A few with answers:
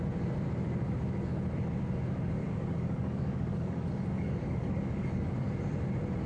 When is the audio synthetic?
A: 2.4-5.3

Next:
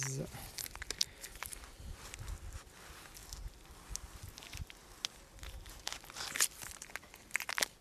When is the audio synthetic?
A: none

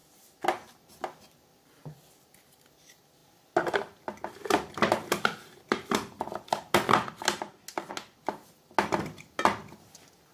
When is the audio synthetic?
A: none

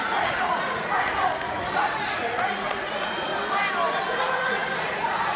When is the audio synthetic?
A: 0.0-3.3; 4.1-5.4

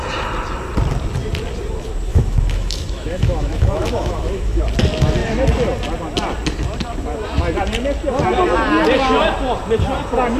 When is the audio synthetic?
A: 2.1-4.6

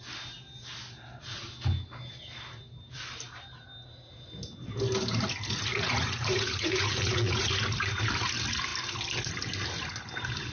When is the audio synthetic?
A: 5.7-7.5

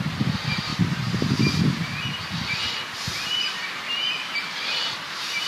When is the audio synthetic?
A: none

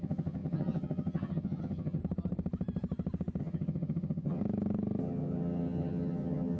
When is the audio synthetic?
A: 0.0-2.0; 3.4-4.4; 5.0-6.6